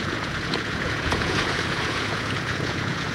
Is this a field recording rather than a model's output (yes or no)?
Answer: no